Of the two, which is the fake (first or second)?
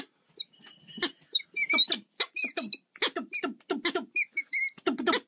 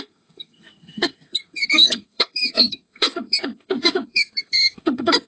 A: second